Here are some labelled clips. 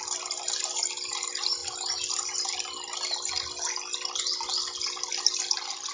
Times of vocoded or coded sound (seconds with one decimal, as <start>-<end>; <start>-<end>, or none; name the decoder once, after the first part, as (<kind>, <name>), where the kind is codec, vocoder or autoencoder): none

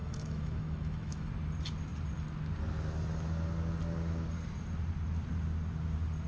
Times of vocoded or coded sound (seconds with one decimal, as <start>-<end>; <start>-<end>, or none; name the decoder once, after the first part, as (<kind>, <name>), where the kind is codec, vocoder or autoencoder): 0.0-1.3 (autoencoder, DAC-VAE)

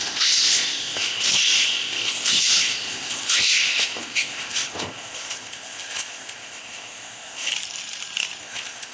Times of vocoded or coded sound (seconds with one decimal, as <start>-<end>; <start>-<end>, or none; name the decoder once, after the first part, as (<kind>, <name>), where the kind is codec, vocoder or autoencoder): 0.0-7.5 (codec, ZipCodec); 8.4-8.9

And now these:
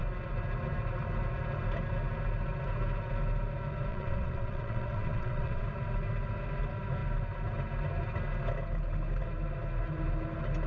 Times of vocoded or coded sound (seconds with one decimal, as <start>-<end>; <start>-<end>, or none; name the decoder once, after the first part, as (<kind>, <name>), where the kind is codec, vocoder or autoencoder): 3.9-5.6 (vocoder, WaveNeXt)

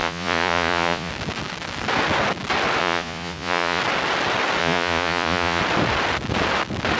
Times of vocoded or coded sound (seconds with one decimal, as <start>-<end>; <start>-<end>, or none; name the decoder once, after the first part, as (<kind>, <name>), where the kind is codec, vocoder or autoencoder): 0.0-1.1 (vocoder, Vocos); 2.8-3.8; 4.6-5.6

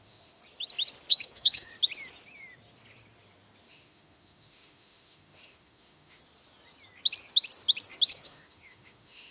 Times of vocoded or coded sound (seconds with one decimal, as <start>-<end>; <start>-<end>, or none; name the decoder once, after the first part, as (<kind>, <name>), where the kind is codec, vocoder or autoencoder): 0.0-0.4 (autoencoder, DAC-VAE); 1.1-1.7; 3.7-6.2; 8.1-9.3